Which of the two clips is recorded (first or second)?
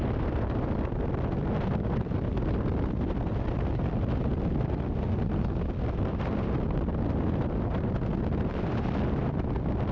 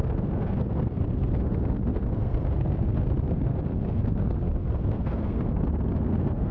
first